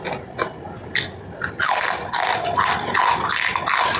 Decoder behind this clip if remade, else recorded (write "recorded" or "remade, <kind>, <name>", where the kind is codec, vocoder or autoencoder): recorded